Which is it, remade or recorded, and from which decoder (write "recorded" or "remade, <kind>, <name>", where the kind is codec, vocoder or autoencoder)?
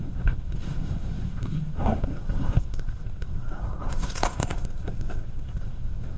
remade, codec, SNAC